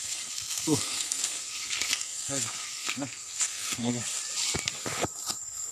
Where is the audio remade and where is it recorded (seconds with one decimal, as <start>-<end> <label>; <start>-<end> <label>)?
0.0-3.9 remade; 3.9-5.3 recorded; 5.3-5.7 remade